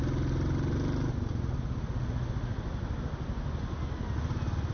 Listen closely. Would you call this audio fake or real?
real